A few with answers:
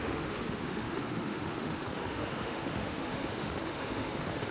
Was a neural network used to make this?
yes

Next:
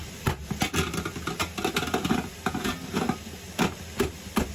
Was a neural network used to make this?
no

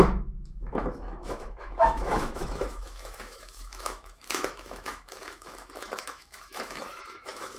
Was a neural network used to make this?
yes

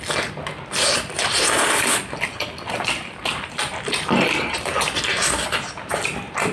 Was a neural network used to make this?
no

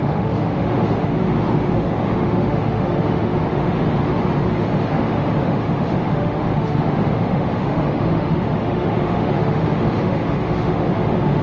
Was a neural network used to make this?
yes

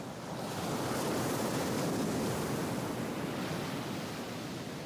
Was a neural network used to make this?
no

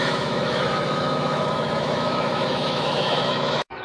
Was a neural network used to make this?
yes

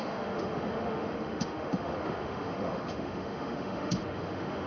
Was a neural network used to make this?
yes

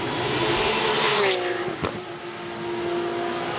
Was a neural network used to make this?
no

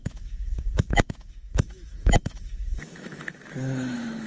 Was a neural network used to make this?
yes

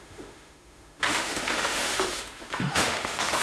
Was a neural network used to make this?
yes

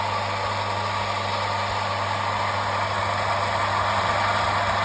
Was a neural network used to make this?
no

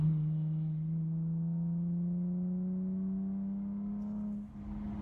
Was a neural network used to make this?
no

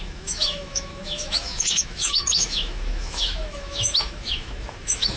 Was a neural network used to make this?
yes